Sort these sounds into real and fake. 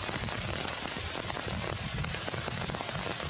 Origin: real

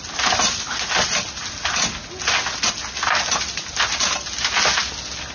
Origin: real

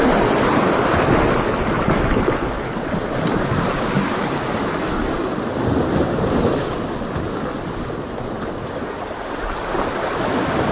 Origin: real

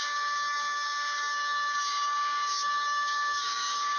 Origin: fake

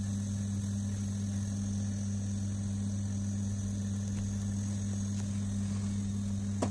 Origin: real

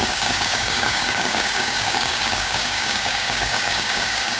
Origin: fake